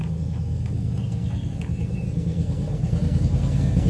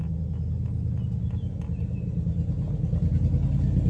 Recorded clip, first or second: second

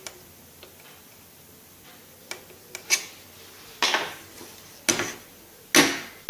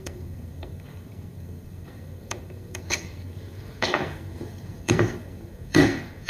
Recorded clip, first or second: first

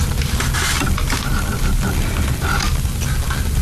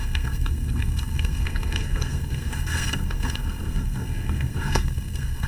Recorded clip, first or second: first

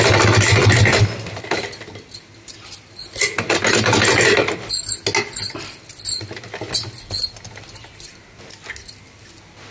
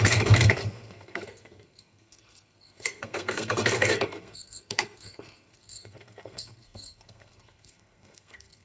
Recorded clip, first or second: first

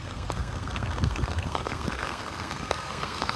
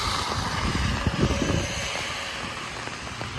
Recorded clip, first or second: second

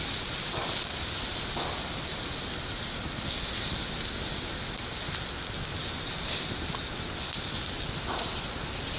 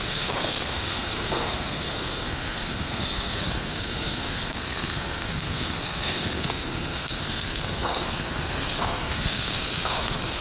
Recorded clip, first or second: first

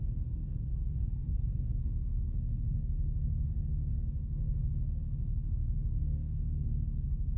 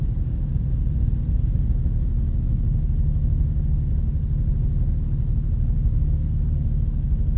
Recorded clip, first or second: second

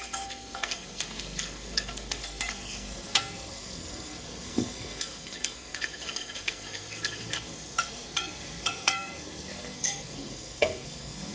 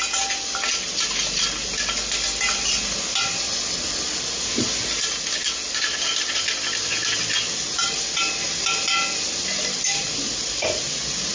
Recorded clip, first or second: second